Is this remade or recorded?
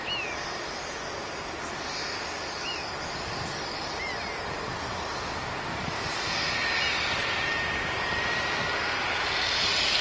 recorded